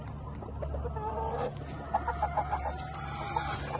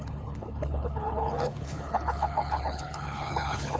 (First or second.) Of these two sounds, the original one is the first